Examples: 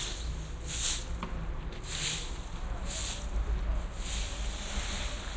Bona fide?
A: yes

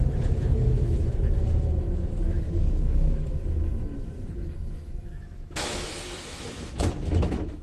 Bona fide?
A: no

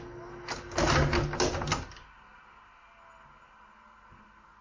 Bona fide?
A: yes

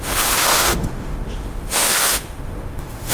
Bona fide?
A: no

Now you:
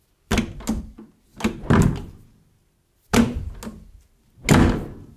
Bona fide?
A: yes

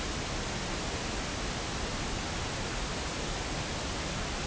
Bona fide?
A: yes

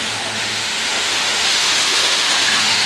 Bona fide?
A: no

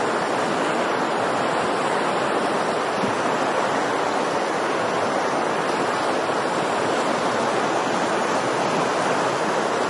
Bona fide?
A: yes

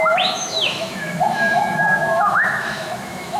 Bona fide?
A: no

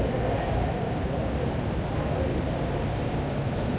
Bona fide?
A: yes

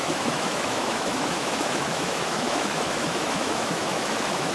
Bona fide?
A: no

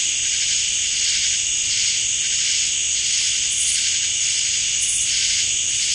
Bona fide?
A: yes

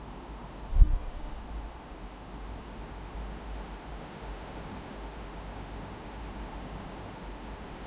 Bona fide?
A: no